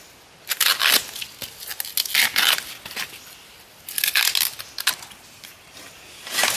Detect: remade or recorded recorded